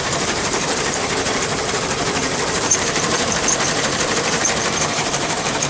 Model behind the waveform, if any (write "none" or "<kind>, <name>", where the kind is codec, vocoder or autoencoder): vocoder, BigVGAN v2